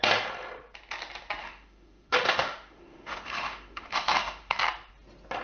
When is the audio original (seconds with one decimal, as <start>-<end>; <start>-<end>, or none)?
0.0-1.4; 4.6-5.4

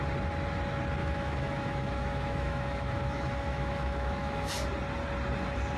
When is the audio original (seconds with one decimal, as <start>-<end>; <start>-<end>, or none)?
0.0-1.0; 4.5-5.8

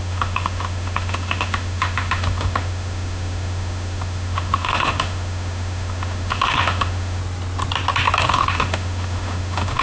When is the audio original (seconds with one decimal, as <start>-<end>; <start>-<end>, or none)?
7.2-8.2

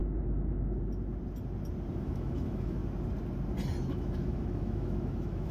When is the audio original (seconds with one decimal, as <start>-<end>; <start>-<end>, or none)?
0.0-1.9; 2.8-3.8